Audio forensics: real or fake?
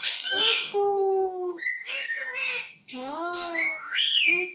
fake